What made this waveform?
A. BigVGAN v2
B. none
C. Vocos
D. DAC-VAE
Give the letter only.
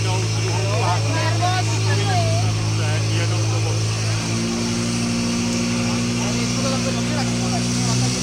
B